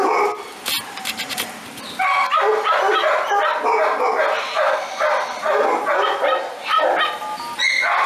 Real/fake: real